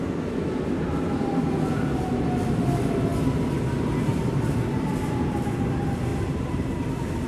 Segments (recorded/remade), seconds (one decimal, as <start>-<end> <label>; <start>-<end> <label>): 0.0-6.1 recorded; 6.1-6.7 remade; 6.7-7.3 recorded